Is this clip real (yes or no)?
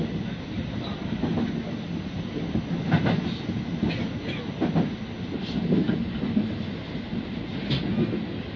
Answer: yes